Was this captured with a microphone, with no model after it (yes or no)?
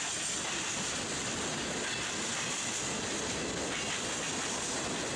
yes